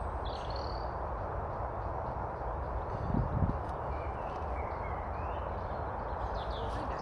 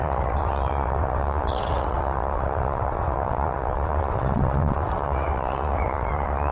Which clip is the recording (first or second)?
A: first